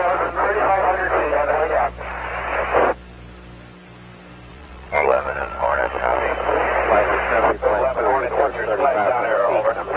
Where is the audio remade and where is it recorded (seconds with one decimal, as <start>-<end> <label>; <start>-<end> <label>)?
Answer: 0.0-4.5 recorded; 4.5-6.2 remade; 6.2-10.0 recorded